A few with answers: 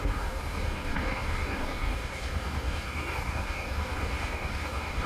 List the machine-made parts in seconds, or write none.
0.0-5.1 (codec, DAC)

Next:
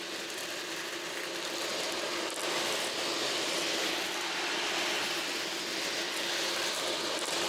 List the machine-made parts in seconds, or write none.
none

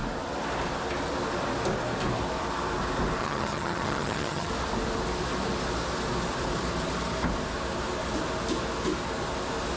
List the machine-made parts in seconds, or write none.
3.2-4.5 (vocoder, HiFi-GAN)

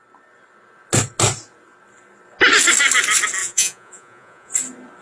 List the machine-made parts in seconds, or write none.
3.4-4.5 (vocoder, Vocos)

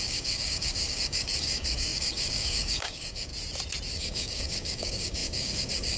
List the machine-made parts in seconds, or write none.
0.0-3.3 (codec, DAC); 3.9-6.0

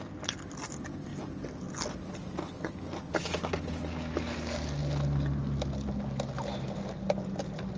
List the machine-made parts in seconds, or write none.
none